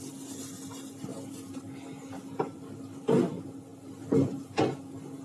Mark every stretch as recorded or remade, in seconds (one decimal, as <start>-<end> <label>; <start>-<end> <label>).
0.0-5.2 recorded